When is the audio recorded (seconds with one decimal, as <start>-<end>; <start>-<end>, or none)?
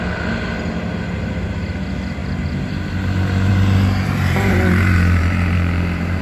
0.0-2.2; 2.7-3.5